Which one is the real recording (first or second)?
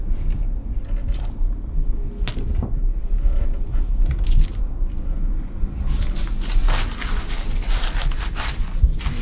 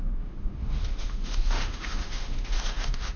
first